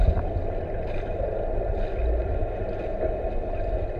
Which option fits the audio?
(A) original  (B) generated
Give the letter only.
A